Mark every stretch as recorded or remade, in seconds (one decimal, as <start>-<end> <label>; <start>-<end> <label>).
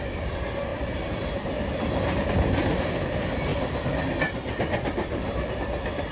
0.0-6.1 recorded